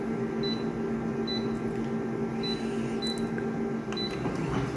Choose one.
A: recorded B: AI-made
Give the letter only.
A